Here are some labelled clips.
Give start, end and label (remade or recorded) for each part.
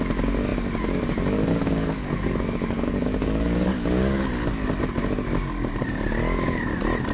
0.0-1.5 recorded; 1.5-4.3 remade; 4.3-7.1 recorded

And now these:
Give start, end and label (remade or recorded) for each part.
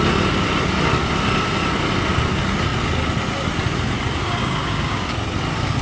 0.0-4.4 recorded; 4.4-5.1 remade; 5.1-5.8 recorded